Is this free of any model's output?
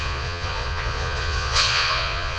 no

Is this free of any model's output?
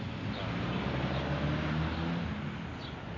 yes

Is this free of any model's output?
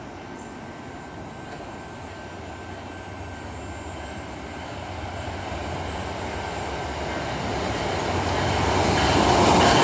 yes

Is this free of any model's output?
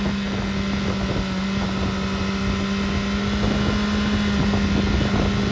yes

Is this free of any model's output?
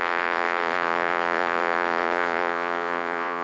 no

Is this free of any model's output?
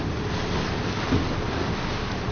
yes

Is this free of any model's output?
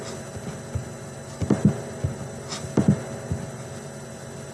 yes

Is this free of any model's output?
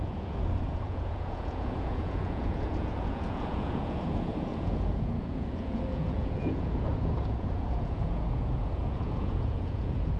no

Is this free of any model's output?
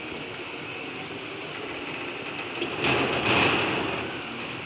yes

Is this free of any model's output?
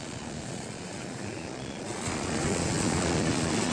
no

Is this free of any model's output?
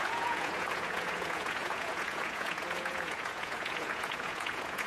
no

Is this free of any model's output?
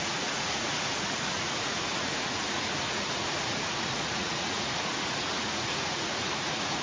no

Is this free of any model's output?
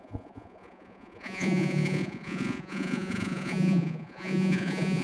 no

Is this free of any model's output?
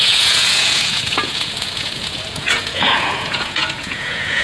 no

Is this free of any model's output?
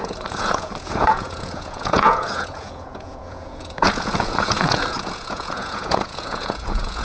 no